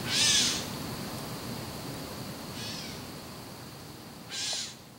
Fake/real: real